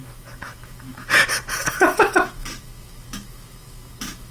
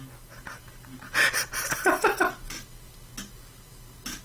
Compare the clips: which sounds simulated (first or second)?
first